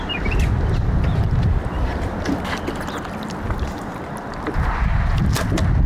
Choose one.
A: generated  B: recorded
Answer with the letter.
B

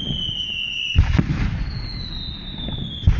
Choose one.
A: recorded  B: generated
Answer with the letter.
A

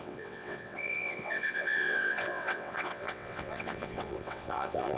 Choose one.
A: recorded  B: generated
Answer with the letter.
B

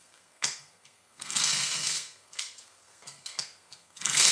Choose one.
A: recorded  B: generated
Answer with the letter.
B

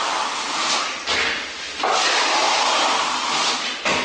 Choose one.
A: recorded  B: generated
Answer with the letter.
A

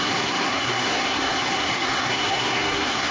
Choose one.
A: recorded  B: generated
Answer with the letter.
B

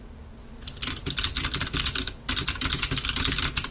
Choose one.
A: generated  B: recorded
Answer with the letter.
B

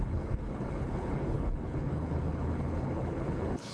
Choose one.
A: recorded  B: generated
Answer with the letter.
B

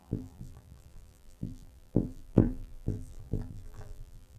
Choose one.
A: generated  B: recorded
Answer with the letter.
A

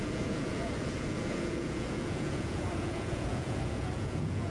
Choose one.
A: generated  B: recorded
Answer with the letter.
A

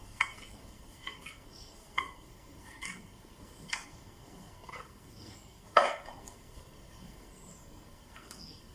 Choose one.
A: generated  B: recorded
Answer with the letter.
A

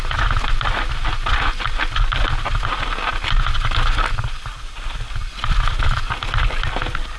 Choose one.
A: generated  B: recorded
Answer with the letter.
B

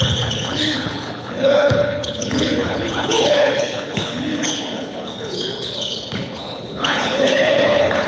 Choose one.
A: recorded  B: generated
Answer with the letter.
B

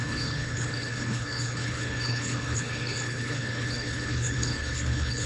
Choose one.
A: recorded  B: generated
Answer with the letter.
B